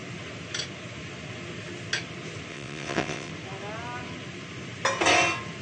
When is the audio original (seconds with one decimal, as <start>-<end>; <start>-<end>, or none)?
0.0-2.5; 3.3-5.6